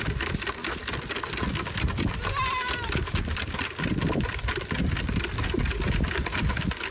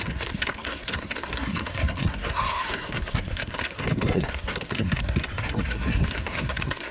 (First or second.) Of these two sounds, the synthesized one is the second